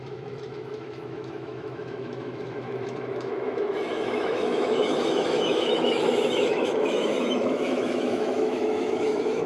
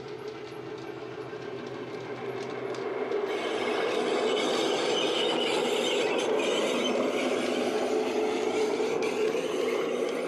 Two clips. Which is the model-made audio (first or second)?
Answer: first